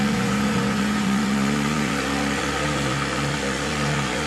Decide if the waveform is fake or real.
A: fake